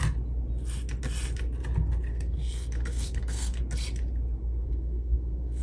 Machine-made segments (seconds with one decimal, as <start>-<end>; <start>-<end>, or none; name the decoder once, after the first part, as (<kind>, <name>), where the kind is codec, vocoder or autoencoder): 2.1-3.6 (codec, SNAC); 4.4-5.6